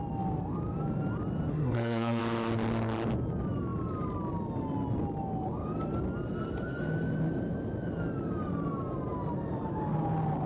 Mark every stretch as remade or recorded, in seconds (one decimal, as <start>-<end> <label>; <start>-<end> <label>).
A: 0.0-1.5 recorded; 1.5-2.2 remade; 2.2-10.5 recorded